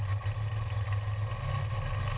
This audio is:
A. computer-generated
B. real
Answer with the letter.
B